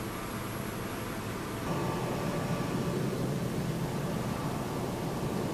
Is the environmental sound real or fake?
real